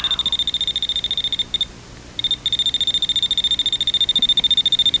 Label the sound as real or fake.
real